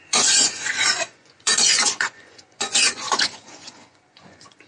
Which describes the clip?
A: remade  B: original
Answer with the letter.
A